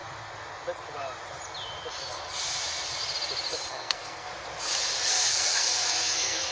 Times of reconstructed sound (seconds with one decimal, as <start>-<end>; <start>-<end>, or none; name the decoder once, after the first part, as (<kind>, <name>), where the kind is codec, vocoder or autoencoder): 3.7-4.3 (codec, SNAC); 5.1-6.5